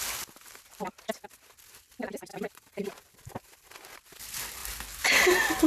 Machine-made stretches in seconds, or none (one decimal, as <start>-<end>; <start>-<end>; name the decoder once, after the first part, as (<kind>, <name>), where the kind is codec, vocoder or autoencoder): 2.3-2.9 (vocoder, BigVGAN v2)